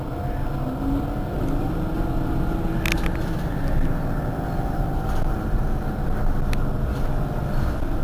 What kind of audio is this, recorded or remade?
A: recorded